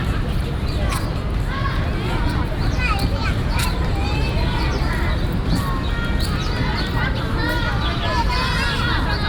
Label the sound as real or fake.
real